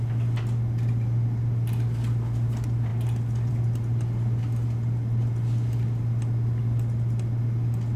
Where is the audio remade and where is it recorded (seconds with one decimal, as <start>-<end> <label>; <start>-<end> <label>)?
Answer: 0.0-8.0 recorded